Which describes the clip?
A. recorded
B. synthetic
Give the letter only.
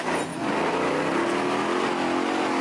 A